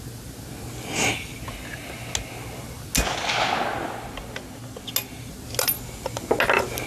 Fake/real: real